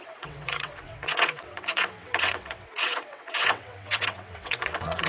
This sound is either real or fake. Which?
fake